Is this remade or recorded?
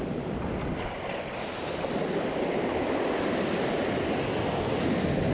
recorded